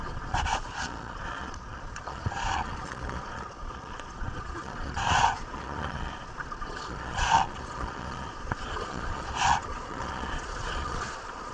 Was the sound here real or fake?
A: fake